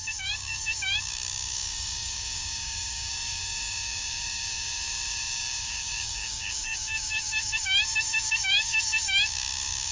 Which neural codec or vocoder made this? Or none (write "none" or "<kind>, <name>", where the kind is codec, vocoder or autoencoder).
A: codec, DAC